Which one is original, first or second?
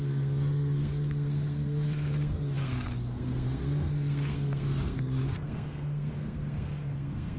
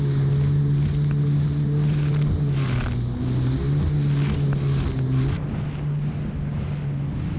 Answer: second